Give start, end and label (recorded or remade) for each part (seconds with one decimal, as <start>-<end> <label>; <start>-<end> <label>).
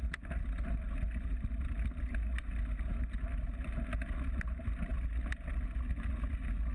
0.0-6.7 recorded